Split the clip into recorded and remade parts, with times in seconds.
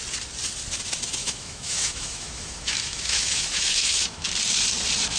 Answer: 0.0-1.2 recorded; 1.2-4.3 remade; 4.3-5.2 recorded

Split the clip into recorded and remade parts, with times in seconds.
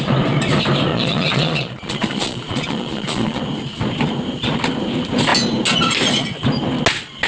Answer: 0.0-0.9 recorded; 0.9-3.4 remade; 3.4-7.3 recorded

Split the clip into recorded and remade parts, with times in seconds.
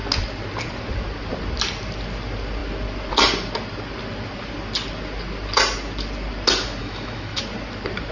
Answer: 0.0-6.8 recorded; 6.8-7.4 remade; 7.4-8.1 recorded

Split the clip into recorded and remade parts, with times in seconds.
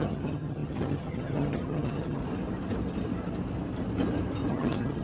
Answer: 0.0-2.2 remade; 2.2-4.5 recorded; 4.5-5.0 remade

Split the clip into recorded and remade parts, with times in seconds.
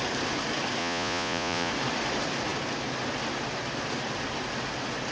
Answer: 0.0-0.8 recorded; 0.8-1.7 remade; 1.7-5.1 recorded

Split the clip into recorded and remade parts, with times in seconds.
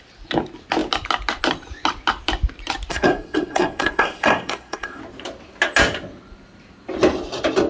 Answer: 0.0-2.9 recorded; 2.9-5.0 remade; 5.0-7.7 recorded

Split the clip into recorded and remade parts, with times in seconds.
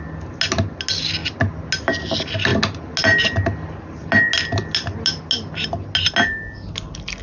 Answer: 0.0-7.2 recorded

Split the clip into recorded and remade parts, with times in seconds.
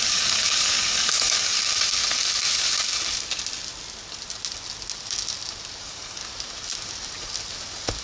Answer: 0.0-1.5 remade; 1.5-5.8 recorded; 5.8-6.2 remade; 6.2-8.0 recorded